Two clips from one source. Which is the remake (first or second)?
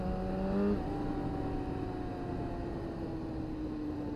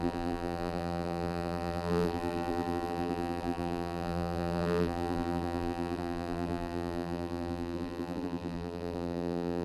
second